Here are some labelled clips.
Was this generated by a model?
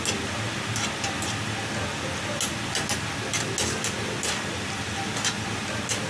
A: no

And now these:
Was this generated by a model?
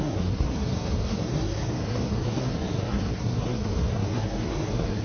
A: yes